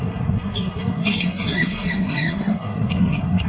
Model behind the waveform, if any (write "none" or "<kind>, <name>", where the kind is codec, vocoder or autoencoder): codec, SNAC